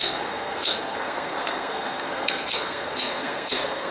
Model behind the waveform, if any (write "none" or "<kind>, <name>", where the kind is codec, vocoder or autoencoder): codec, SNAC